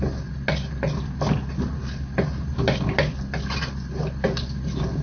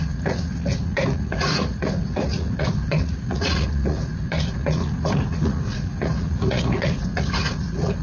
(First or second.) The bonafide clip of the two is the first